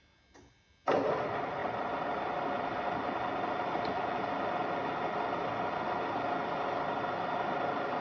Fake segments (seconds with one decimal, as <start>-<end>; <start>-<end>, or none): 1.6-2.5